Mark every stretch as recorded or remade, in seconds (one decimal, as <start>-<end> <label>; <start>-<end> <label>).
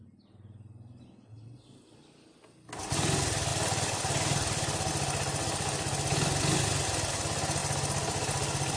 0.0-8.8 recorded